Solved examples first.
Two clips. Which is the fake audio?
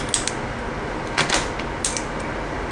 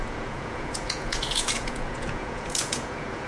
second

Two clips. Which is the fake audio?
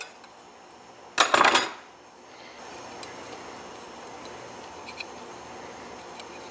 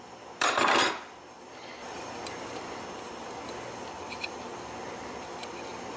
second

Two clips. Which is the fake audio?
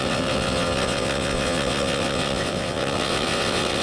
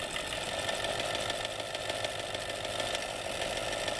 first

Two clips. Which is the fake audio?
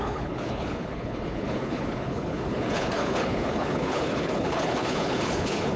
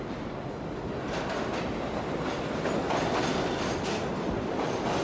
first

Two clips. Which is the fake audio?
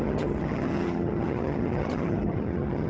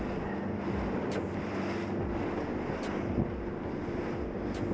first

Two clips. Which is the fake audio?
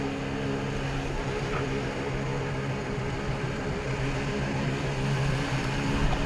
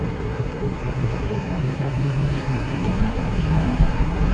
second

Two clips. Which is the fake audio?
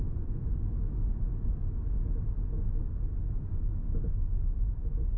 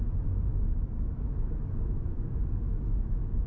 second